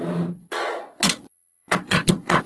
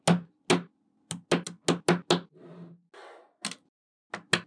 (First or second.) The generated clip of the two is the first